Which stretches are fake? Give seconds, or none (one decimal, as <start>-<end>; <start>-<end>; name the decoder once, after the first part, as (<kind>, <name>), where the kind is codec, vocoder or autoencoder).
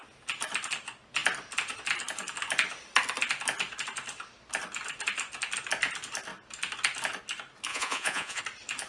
7.7-8.4 (vocoder, Vocos)